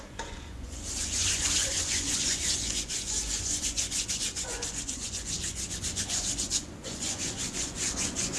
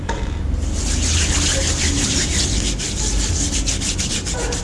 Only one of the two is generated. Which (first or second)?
first